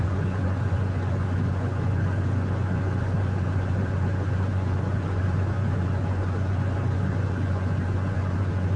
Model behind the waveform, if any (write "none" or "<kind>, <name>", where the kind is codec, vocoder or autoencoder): vocoder, Vocos